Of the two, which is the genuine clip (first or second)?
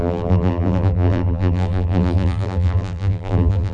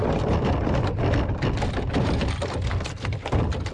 second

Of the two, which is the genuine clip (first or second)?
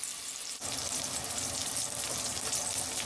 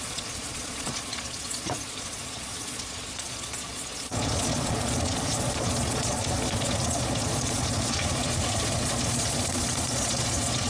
first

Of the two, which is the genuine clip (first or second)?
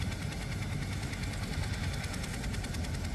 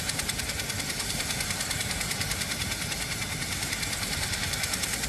first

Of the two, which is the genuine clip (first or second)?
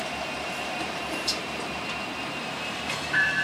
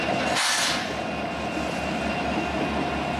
second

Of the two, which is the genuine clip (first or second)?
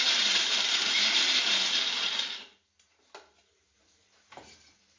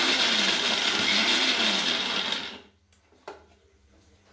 second